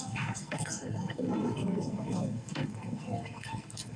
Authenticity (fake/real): fake